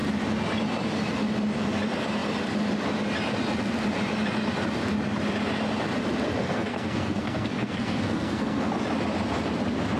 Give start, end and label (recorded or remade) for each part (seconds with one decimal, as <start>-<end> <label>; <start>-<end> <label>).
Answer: 0.0-6.4 recorded; 6.4-8.7 remade; 8.7-10.0 recorded